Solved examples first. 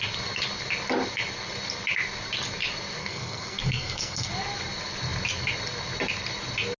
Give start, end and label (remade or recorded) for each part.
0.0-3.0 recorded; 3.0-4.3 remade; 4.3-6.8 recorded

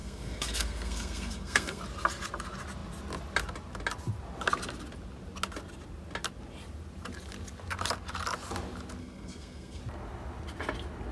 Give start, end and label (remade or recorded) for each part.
0.0-1.8 remade; 1.8-9.0 recorded; 9.0-9.8 remade; 9.8-11.1 recorded